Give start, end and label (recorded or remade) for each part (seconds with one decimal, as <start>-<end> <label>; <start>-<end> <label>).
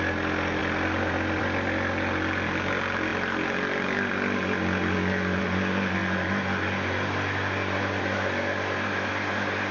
0.0-9.7 recorded